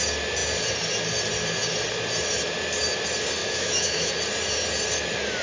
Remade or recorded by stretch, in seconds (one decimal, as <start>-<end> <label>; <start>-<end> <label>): 0.0-3.4 recorded; 3.4-4.1 remade; 4.1-5.4 recorded